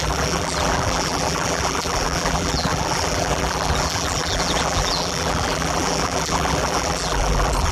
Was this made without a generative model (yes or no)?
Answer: no